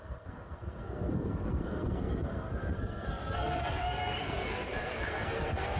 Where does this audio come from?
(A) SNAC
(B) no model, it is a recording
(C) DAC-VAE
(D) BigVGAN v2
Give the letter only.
A